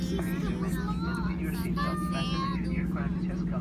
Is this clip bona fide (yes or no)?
yes